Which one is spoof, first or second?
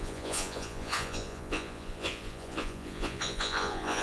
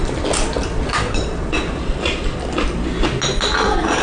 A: first